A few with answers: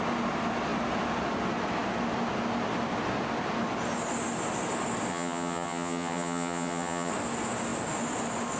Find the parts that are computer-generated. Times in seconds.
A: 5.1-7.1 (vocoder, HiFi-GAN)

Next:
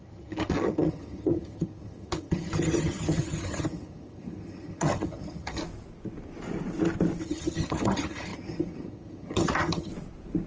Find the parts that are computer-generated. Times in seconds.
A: 0.0-5.6 (vocoder, HiFi-GAN); 7.2-9.9

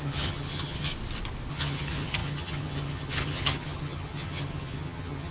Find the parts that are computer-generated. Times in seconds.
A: 0.0-0.9 (vocoder, HiFi-GAN); 1.5-5.3

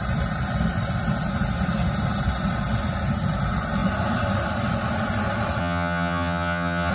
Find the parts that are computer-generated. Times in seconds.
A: 5.6-6.9 (vocoder, HiFi-GAN)